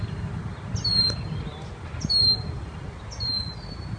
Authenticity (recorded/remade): recorded